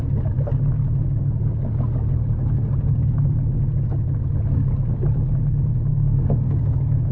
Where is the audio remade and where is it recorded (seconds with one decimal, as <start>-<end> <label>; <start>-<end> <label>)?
0.0-5.9 recorded; 5.9-6.6 remade; 6.6-7.1 recorded